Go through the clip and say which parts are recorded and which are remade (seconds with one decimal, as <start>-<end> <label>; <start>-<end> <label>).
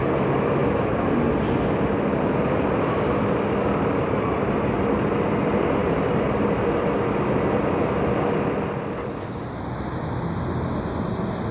0.0-11.5 recorded